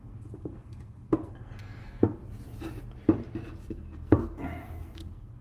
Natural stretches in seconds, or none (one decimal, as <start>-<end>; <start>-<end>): 2.2-3.7